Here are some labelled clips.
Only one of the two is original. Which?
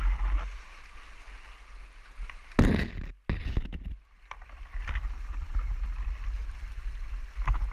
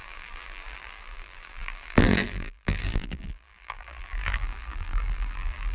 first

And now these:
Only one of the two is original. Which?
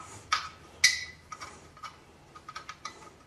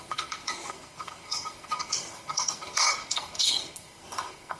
first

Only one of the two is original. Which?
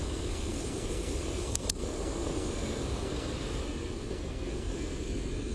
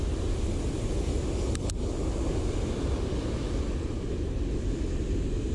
second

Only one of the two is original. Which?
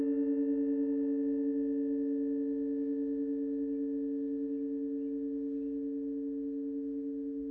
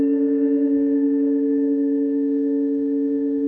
first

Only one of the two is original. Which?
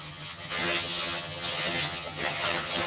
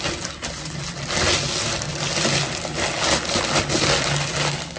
second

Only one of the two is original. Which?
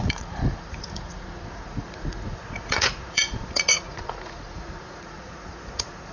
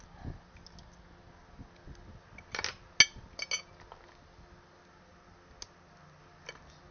second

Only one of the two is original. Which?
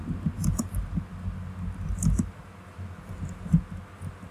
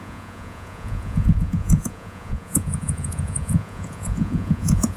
first